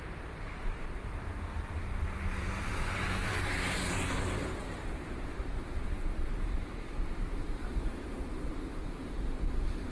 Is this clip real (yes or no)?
no